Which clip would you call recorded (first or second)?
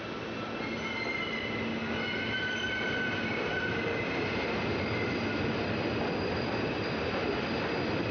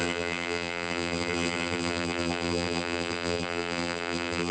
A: first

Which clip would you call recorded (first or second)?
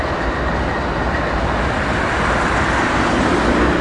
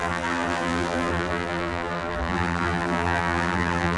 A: first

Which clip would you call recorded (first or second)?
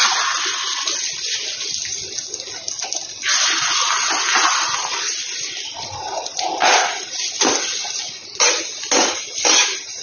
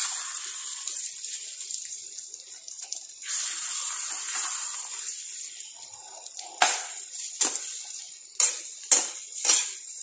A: first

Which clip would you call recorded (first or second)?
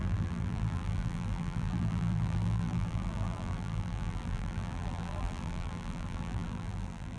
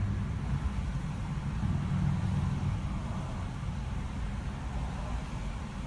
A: second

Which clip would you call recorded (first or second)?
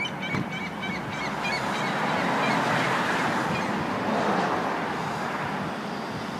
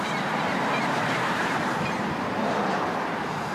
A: first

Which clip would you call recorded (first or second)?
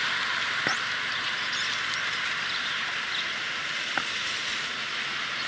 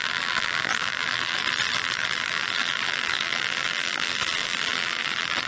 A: first